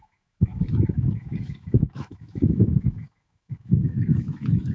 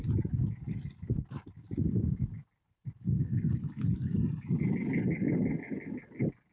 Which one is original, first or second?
second